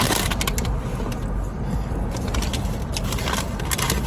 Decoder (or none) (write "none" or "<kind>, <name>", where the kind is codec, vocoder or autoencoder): none